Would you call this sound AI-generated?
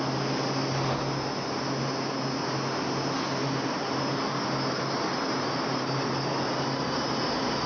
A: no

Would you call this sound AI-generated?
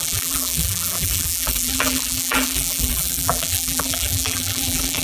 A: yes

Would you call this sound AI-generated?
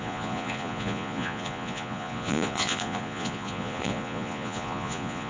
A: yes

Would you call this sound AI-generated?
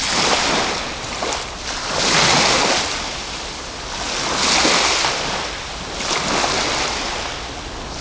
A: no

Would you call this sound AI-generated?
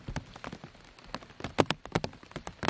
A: no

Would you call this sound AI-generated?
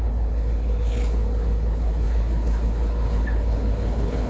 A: yes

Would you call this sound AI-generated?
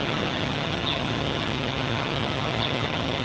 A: yes